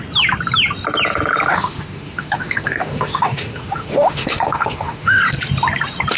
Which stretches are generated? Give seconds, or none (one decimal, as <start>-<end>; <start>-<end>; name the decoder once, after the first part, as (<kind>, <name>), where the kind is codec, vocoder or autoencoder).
1.5-5.2 (autoencoder, DAC-VAE)